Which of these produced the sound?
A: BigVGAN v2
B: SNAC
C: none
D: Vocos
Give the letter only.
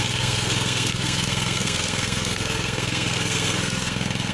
B